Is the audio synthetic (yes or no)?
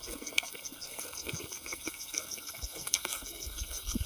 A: yes